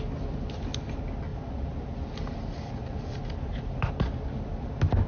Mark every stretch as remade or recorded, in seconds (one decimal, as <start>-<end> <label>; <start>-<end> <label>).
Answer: 0.0-1.3 recorded; 1.3-3.9 remade; 3.9-5.1 recorded